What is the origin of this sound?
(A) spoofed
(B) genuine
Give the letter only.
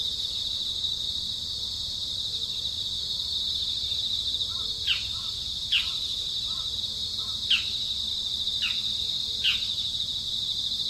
B